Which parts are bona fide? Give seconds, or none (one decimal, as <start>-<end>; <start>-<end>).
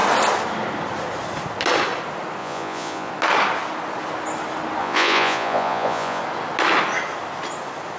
0.0-2.4; 3.1-4.8; 6.2-8.0